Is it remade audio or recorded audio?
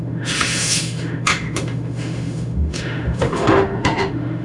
remade